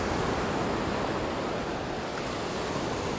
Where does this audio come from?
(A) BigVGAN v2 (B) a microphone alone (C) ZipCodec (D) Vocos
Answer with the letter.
B